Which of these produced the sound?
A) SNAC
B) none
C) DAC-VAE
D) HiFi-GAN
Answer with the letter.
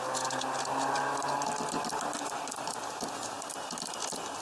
B